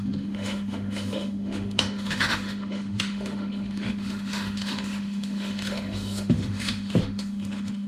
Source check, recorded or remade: remade